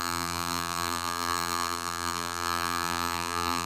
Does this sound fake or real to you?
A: fake